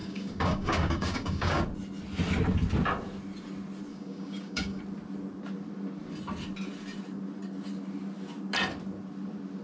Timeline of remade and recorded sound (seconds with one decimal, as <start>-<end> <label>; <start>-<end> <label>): 0.0-1.6 remade; 1.6-3.9 recorded; 3.9-4.8 remade; 4.8-9.6 recorded